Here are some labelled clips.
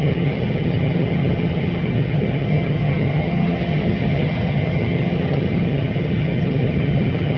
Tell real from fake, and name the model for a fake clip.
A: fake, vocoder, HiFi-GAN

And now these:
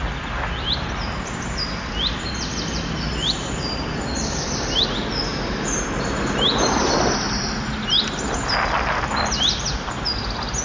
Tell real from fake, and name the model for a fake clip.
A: real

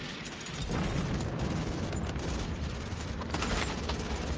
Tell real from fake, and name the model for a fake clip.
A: real